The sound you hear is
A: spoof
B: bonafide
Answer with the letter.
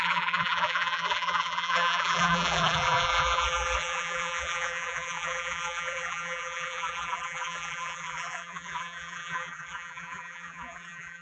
A